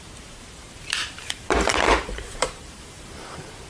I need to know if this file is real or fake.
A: fake